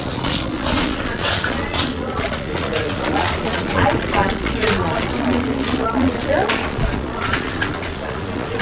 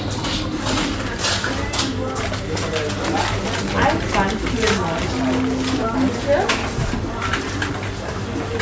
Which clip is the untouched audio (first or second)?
second